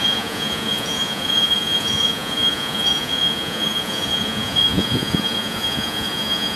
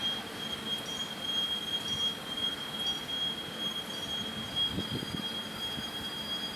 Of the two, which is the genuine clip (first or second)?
second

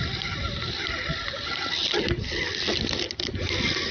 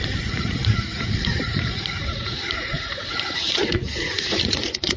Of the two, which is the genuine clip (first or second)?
first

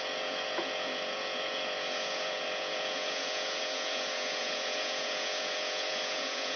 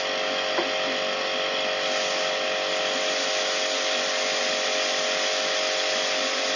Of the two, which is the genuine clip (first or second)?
second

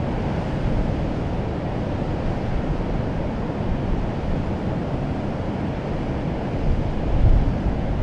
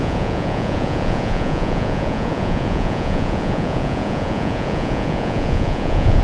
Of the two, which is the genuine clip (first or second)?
first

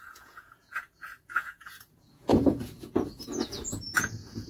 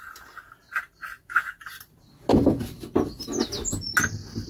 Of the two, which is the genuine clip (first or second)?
second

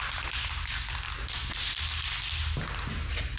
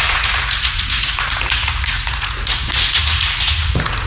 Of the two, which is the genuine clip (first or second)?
first